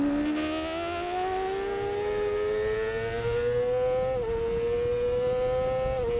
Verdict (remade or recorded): recorded